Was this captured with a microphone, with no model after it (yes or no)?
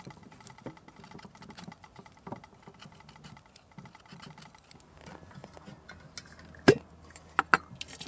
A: yes